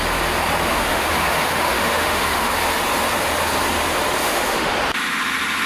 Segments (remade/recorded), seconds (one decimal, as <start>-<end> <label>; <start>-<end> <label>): 0.0-0.7 recorded; 0.7-2.5 remade; 2.5-4.2 recorded; 4.2-4.7 remade; 4.7-5.7 recorded